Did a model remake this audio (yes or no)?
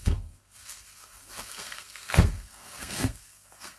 yes